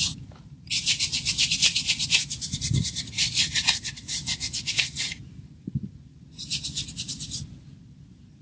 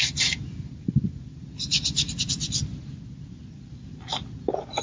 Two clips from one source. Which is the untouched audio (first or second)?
second